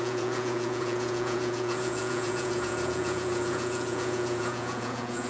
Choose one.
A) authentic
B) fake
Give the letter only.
B